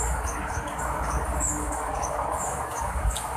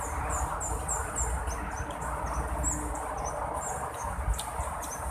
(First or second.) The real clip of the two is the second